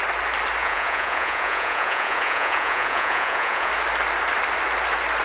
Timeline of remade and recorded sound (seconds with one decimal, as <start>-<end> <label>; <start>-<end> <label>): 0.0-0.6 recorded; 0.6-3.7 remade; 3.7-5.2 recorded